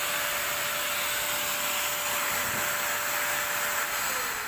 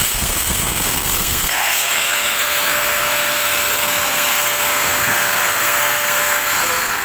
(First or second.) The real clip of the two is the first